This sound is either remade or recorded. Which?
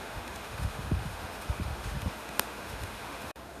remade